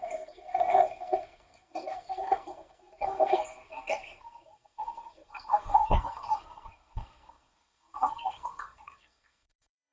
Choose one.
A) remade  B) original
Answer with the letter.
A